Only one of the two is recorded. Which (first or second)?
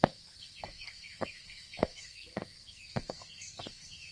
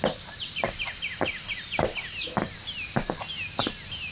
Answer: second